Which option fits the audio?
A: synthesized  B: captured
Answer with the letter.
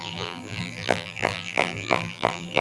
A